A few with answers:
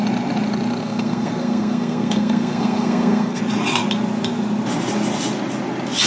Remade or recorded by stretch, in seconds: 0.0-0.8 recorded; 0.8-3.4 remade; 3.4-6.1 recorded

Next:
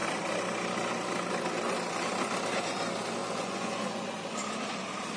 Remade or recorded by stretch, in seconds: 0.0-3.2 recorded; 3.2-4.0 remade; 4.0-5.2 recorded